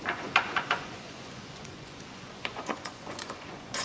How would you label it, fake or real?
fake